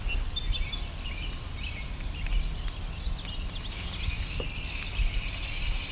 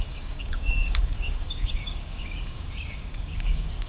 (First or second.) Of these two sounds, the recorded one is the first